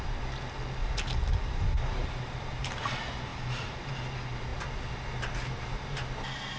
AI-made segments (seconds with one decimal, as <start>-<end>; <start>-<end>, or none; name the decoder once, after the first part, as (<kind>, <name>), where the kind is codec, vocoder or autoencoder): 0.8-2.9 (vocoder, BigVGAN v2); 3.3-3.9